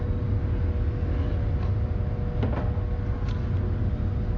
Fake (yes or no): no